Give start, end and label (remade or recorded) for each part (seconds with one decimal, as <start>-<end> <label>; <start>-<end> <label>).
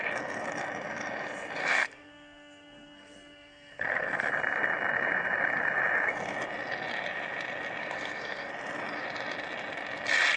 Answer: 0.0-1.6 recorded; 1.6-4.3 remade; 4.3-7.8 recorded; 7.8-8.5 remade; 8.5-10.4 recorded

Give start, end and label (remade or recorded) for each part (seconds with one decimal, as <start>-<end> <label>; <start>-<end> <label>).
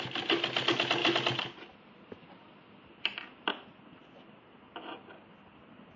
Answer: 0.0-6.0 recorded